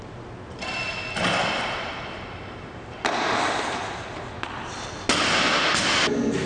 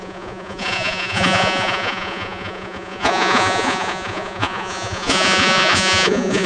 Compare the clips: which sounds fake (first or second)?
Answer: second